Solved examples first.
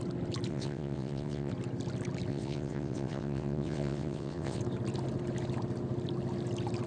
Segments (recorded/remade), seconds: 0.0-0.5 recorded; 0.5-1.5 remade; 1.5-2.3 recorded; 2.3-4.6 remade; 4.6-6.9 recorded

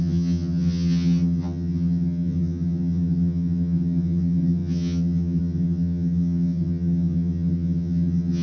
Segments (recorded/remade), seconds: 0.0-8.4 remade